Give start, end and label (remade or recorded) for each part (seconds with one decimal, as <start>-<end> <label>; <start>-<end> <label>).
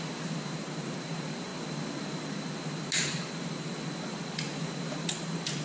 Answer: 0.0-5.6 recorded